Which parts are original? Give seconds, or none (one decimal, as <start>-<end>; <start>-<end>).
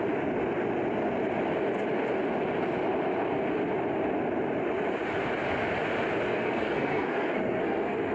0.0-6.3